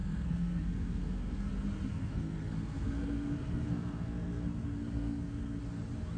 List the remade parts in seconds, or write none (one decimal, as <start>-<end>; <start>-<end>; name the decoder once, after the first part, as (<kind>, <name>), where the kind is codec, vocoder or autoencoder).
0.0-1.5 (codec, SNAC); 1.9-5.6